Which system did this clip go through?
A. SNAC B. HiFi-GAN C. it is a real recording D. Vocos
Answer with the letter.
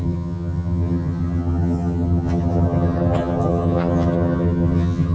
B